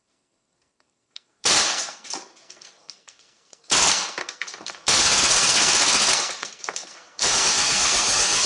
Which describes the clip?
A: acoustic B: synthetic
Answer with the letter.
B